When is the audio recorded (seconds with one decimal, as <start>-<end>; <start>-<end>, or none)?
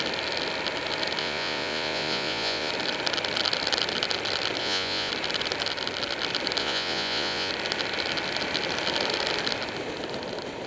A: 0.0-1.2; 2.7-4.6; 5.1-6.6; 7.5-10.7